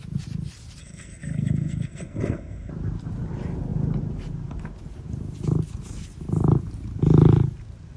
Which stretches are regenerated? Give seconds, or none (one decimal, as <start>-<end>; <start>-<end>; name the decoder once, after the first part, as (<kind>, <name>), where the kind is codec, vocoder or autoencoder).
0.8-2.7 (codec, SNAC)